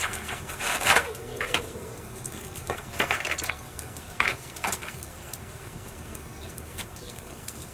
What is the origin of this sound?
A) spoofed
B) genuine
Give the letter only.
A